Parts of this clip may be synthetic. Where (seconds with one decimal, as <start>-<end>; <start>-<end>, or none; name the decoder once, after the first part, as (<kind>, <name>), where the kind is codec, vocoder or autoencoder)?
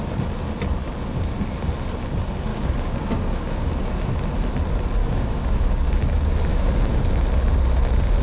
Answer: 2.5-3.7 (codec, DAC); 5.0-5.9; 6.5-7.0